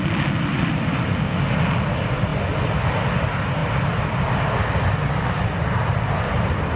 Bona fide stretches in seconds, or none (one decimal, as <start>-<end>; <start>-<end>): 0.0-6.8